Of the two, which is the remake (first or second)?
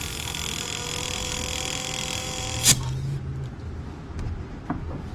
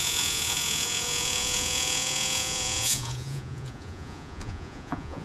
second